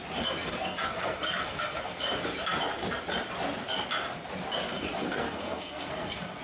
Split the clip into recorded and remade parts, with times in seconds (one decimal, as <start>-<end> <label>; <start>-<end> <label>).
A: 0.0-0.5 recorded; 0.5-2.0 remade; 2.0-5.0 recorded; 5.0-6.4 remade